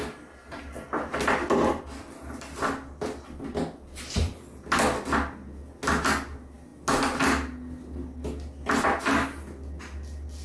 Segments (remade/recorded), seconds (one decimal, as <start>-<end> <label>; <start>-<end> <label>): 0.0-10.4 recorded